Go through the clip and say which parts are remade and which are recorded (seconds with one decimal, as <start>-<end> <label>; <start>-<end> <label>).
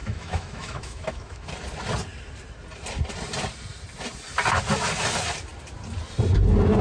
0.0-1.5 remade; 1.5-6.8 recorded